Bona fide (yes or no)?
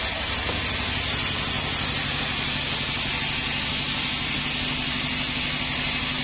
yes